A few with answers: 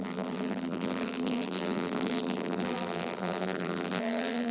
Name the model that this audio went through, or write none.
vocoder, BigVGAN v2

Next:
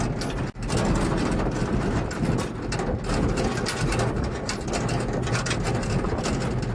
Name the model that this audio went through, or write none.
none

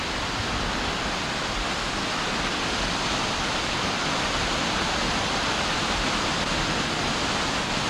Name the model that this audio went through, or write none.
none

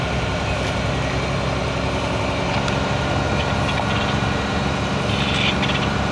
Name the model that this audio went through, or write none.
none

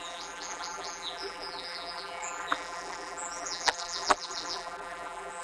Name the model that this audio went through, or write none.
vocoder, BigVGAN v2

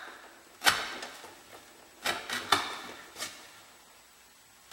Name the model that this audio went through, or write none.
none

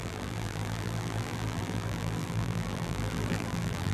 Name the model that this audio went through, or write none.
vocoder, BigVGAN v2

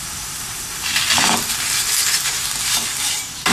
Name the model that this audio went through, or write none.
none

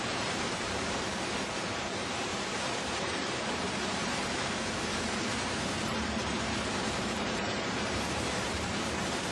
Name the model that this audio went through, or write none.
vocoder, BigVGAN v2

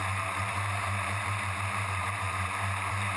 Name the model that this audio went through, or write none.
vocoder, BigVGAN v2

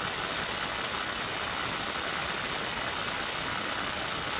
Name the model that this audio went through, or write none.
none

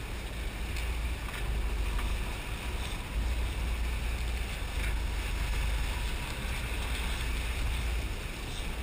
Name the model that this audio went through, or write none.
none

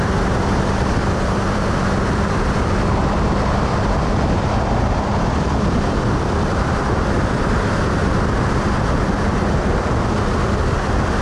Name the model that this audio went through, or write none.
vocoder, BigVGAN v2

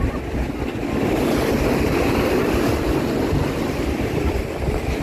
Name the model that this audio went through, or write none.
none